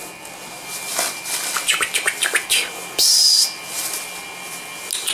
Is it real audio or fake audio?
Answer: real